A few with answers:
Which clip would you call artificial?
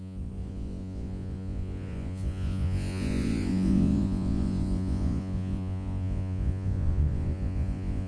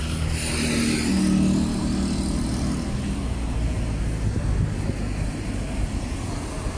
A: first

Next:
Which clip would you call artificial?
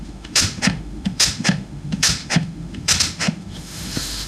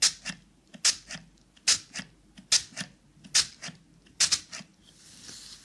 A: first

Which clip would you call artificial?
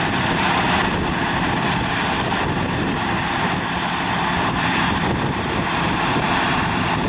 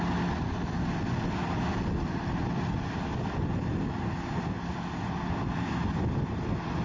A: first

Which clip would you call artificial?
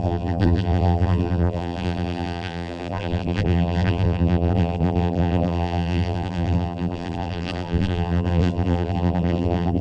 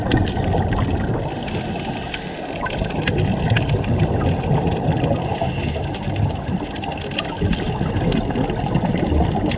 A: first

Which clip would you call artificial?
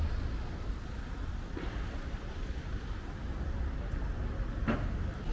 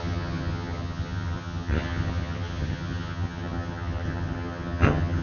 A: second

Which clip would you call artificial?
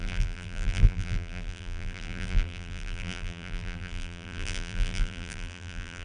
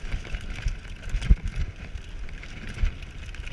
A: first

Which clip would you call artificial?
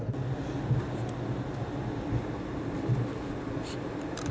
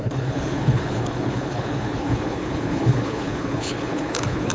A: second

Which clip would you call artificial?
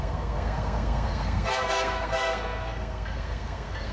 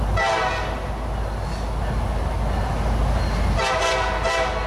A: first